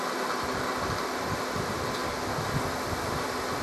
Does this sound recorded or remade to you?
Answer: recorded